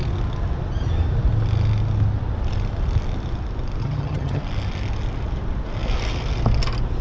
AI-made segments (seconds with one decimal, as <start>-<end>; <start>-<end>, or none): 3.8-4.4